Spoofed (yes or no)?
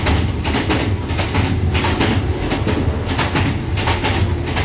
no